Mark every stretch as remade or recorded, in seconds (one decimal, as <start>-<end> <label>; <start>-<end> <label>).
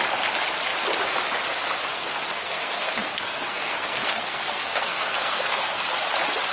0.0-1.9 recorded; 1.9-5.8 remade; 5.8-6.5 recorded